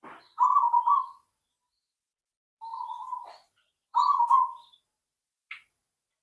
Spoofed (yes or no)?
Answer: no